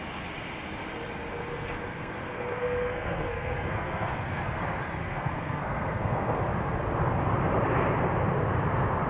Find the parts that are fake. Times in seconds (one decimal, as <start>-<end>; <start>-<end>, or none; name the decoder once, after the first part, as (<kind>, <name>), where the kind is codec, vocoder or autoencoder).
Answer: 1.5-4.6 (codec, SNAC); 5.0-6.4